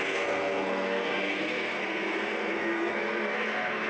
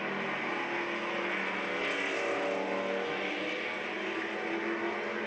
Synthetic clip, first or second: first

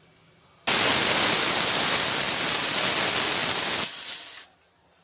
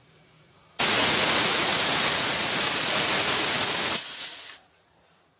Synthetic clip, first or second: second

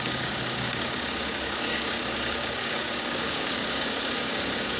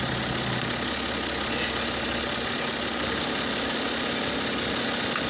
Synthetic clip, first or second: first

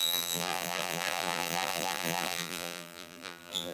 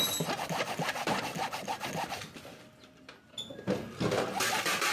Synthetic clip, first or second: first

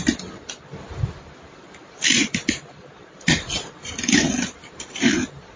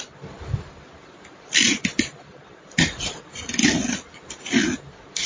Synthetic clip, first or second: first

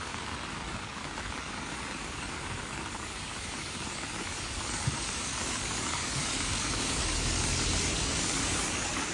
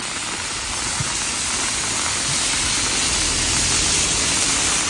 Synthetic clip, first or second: first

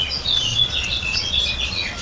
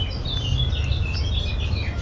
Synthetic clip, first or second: first